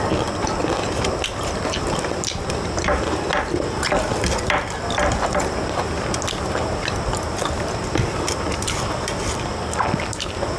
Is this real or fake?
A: real